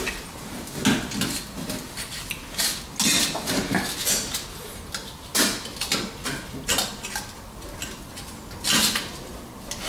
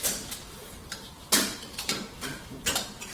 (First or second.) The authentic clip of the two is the first